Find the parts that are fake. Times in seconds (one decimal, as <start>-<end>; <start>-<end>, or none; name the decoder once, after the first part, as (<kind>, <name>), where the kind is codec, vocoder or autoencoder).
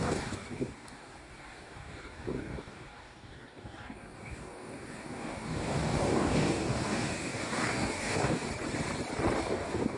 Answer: 0.0-8.5 (codec, DAC); 9.4-10.0